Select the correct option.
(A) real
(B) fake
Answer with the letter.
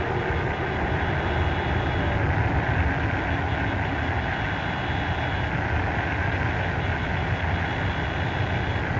A